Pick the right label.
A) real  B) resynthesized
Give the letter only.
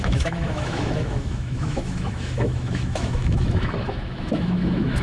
B